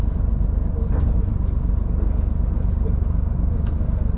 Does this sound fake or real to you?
real